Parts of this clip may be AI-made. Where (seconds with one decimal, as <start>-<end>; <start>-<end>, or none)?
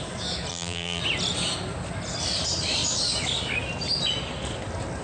0.5-1.0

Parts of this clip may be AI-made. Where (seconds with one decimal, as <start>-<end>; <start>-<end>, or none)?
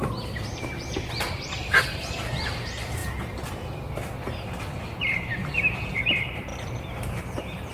0.0-3.0; 3.9-7.7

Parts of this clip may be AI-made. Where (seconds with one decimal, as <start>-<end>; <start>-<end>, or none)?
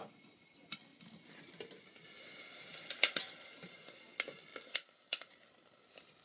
0.9-2.1; 2.7-3.2; 4.5-5.7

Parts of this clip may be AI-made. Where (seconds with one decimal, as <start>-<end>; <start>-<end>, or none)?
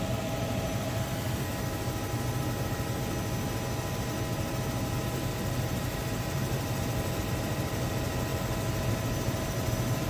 0.0-1.5; 5.0-10.1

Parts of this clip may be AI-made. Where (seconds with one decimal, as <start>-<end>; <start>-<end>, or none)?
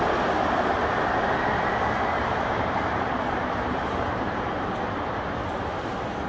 2.1-4.7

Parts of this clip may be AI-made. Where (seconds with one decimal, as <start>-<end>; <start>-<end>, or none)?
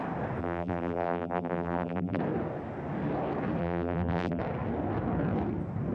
0.4-2.2; 3.6-4.4